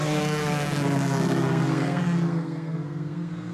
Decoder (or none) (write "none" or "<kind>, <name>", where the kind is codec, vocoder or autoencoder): codec, SNAC